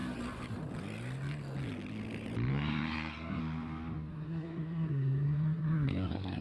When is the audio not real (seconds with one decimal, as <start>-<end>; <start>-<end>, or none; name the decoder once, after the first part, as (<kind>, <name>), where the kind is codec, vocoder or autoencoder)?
2.5-3.4 (codec, SNAC); 4.1-6.4